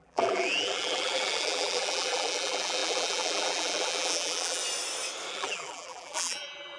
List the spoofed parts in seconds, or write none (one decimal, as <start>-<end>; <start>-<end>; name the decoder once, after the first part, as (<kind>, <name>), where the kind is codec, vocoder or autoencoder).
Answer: 0.0-4.6 (vocoder, BigVGAN v2); 5.3-6.8